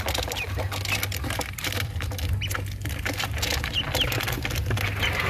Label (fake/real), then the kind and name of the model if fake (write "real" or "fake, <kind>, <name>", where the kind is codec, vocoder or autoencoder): real